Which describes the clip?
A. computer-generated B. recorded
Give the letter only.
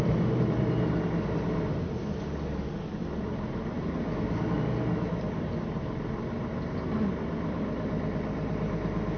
B